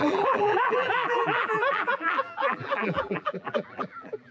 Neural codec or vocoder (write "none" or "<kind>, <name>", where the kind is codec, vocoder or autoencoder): vocoder, BigVGAN v2